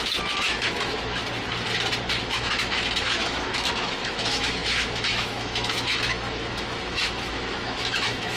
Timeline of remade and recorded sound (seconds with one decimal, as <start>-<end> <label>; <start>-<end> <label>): 0.0-1.2 remade; 1.2-2.2 recorded; 2.2-8.4 remade